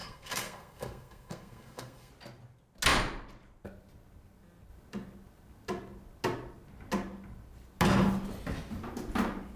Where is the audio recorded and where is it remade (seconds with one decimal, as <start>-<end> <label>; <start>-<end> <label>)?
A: 0.0-2.1 remade; 2.1-9.6 recorded